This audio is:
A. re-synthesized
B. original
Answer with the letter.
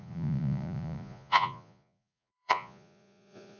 A